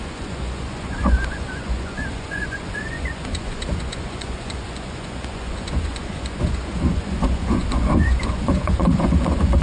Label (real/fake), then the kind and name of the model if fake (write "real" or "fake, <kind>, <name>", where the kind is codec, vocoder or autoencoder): fake, vocoder, Vocos